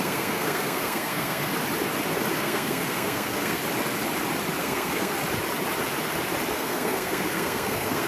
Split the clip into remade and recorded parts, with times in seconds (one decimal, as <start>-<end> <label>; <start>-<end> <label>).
0.0-1.5 remade; 1.5-2.3 recorded; 2.3-3.6 remade; 3.6-4.6 recorded; 4.6-5.2 remade; 5.2-6.5 recorded; 6.5-8.1 remade